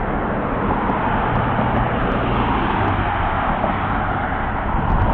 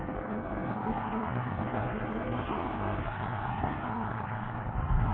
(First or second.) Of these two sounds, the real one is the first